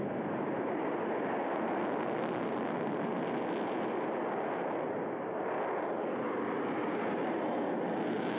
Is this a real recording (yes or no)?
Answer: yes